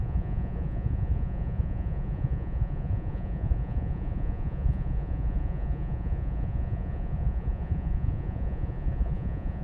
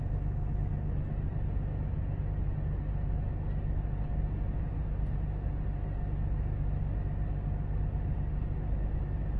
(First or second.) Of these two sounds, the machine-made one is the first